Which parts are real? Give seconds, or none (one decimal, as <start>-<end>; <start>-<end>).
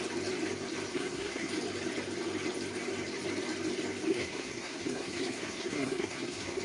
0.0-0.9; 1.5-4.1